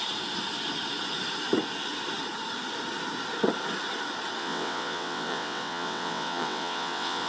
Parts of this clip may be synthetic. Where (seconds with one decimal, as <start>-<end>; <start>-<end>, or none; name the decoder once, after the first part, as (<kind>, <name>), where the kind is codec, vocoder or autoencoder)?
4.4-7.3 (vocoder, WaveNeXt)